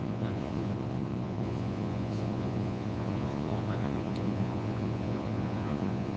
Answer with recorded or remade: remade